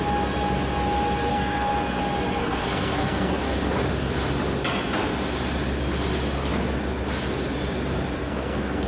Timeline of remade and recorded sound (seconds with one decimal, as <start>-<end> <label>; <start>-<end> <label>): 0.0-1.3 recorded; 1.3-2.0 remade; 2.0-2.4 recorded; 2.4-3.4 remade; 3.4-8.2 recorded; 8.2-8.9 remade